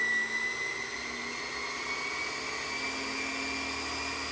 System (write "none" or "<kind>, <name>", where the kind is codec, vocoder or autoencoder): none